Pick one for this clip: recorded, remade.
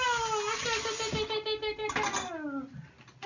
recorded